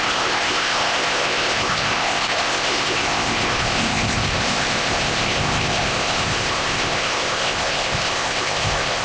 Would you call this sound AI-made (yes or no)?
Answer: yes